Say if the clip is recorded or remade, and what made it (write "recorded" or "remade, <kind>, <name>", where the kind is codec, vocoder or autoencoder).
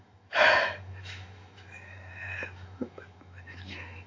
remade, autoencoder, DAC-VAE